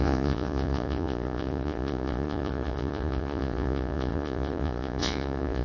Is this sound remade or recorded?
remade